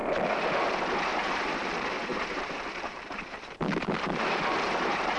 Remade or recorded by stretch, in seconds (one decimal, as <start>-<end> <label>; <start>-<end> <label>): 0.0-1.1 recorded; 1.1-1.7 remade; 1.7-2.1 recorded; 2.1-5.2 remade